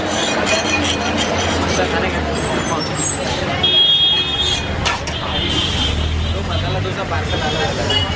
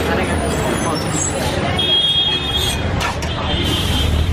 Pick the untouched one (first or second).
first